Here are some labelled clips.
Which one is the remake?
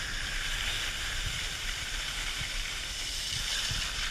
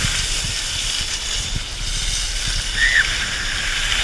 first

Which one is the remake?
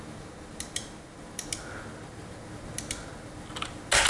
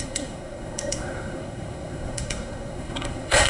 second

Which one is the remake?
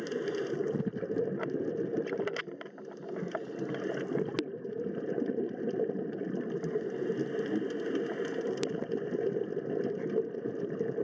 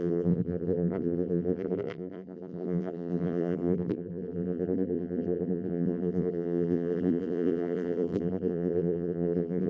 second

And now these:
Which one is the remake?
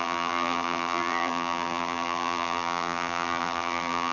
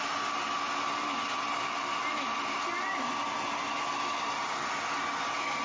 first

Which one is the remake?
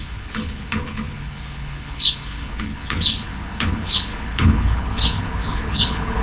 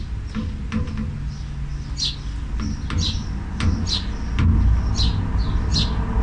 first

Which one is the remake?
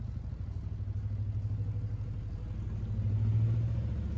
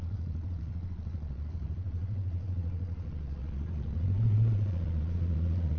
second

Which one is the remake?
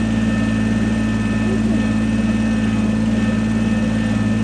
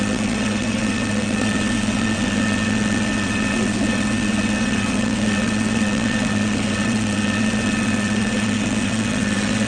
second